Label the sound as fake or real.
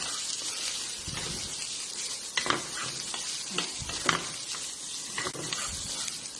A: real